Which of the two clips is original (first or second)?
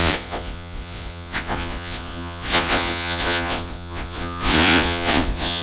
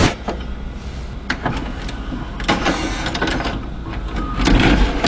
second